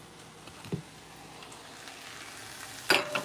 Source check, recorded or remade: recorded